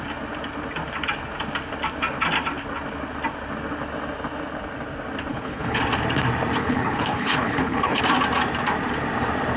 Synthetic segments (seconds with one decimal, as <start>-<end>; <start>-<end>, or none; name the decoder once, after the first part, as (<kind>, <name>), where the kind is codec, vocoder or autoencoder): 5.3-5.8 (codec, HILCodec); 6.6-8.0